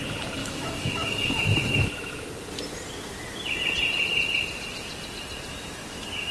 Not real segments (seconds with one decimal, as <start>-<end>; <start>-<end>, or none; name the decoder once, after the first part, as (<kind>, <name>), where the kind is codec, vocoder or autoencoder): 0.4-2.1 (autoencoder, DAC-VAE)